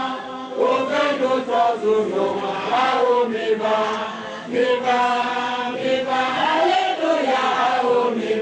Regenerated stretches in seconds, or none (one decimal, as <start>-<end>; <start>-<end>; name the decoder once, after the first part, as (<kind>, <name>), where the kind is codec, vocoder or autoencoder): 0.0-6.9 (codec, DAC); 7.7-8.4

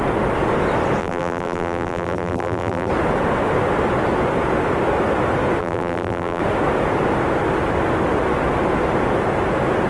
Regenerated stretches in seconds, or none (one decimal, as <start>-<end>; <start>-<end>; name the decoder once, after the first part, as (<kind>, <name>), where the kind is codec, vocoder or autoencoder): 1.0-2.9 (vocoder, BigVGAN v2); 5.6-6.4

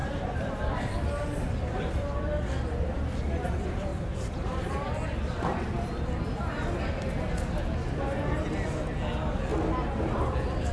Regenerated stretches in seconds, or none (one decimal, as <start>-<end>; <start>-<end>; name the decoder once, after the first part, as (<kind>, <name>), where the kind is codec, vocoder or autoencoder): 0.0-1.0 (vocoder, BigVGAN v2); 3.9-4.7

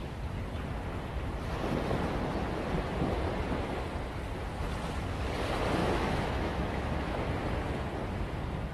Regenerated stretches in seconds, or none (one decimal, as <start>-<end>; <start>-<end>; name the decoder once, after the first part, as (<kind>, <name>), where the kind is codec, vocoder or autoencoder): 5.8-7.3 (autoencoder, DAC-VAE)

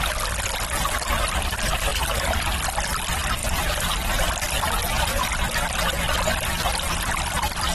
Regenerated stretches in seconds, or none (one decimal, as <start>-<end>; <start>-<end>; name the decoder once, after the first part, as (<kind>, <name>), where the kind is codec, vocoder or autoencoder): 3.4-5.3 (vocoder, BigVGAN v2)